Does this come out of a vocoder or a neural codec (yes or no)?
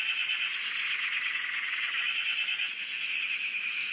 no